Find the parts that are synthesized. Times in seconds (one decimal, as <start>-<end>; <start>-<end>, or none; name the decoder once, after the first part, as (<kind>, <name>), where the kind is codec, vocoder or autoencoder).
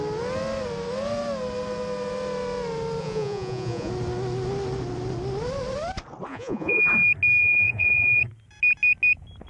3.0-3.9 (vocoder, Vocos); 6.3-6.8; 7.4-8.2